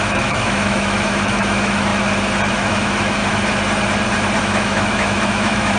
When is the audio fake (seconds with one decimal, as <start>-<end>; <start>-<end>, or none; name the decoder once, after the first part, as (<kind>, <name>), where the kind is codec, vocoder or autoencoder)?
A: 0.0-1.9 (autoencoder, DAC-VAE); 2.5-3.2; 4.4-5.8